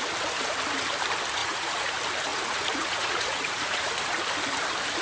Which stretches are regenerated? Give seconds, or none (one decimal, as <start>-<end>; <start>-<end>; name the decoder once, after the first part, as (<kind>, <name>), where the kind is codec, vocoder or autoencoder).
1.4-1.9 (vocoder, Vocos); 2.3-3.9

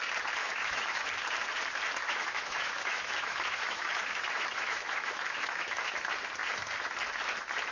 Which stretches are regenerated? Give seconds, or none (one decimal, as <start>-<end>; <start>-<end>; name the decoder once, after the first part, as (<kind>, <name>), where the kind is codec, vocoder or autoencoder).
0.4-1.1 (autoencoder, DAC-VAE); 2.0-5.9

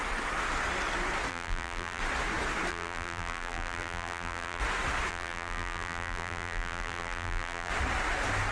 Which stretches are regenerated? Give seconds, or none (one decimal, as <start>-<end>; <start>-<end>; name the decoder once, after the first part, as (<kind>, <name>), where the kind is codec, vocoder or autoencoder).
1.3-2.0 (vocoder, BigVGAN v2); 2.7-4.6; 5.1-7.7